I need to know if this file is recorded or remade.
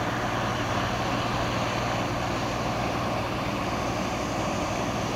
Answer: recorded